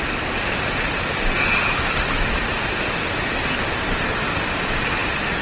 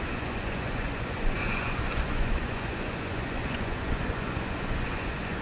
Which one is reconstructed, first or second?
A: second